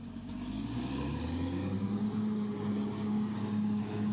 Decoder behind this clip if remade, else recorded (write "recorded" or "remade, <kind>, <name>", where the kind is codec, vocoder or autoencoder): remade, codec, DAC